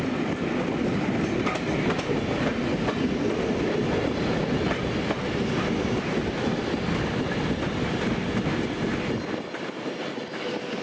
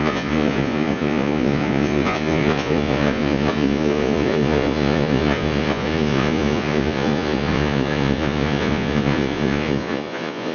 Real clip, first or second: first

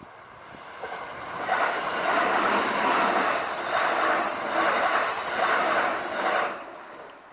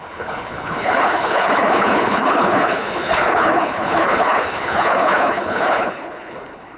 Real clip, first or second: first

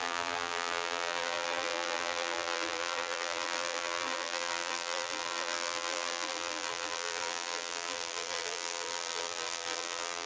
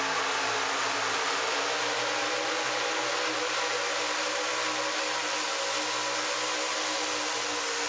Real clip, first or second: second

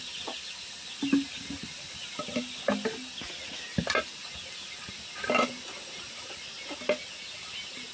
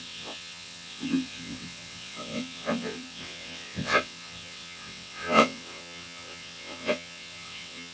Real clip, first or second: first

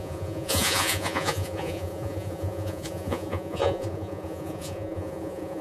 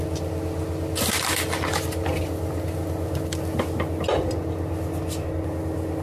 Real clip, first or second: second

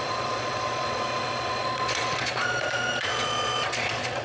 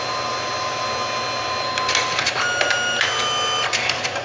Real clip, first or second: second